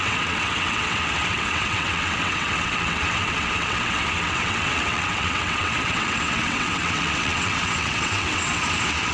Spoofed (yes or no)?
yes